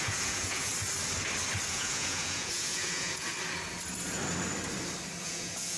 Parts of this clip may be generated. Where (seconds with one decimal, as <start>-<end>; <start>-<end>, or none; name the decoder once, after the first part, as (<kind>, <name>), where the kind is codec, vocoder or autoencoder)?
0.0-0.7 (vocoder, Vocos); 1.7-3.3; 5.2-5.8